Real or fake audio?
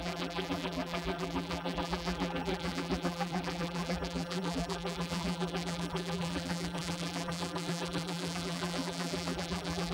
fake